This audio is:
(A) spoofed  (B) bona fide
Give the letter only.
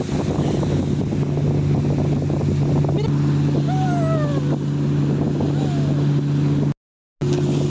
B